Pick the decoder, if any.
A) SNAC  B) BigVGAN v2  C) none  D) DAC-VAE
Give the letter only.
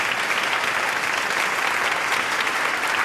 C